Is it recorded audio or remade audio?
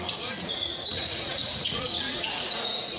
remade